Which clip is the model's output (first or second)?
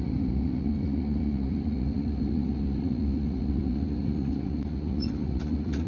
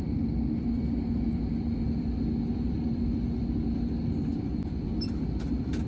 first